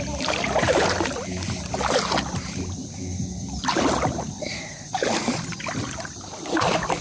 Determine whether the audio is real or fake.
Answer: real